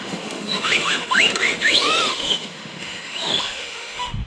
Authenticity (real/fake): fake